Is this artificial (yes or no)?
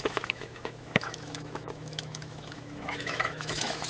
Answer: yes